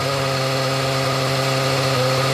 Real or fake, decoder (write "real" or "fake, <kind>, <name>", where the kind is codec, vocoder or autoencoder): real